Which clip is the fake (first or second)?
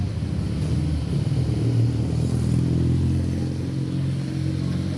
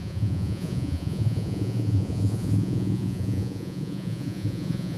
second